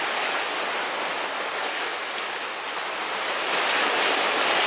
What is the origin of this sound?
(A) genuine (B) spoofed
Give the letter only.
A